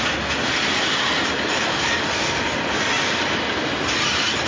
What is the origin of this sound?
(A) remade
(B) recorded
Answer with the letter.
B